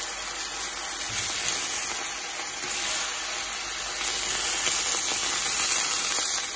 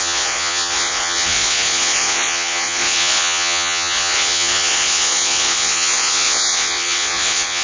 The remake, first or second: second